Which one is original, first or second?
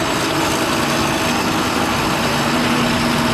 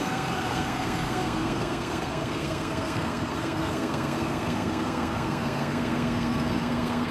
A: first